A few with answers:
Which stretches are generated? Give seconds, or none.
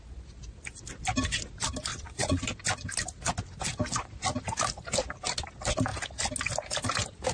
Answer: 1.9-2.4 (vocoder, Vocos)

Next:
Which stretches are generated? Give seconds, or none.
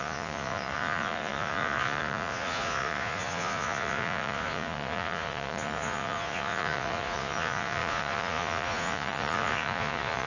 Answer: 0.0-10.3 (vocoder, Vocos)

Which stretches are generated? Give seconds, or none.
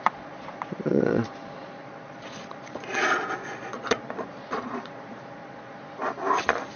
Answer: 0.0-6.0 (vocoder, Vocos)